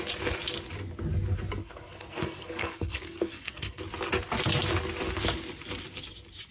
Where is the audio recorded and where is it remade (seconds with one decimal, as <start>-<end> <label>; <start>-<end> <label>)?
0.0-1.6 recorded; 1.6-3.8 remade; 3.8-6.5 recorded